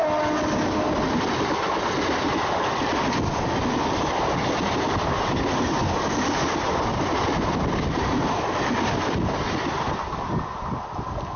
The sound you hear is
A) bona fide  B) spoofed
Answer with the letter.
A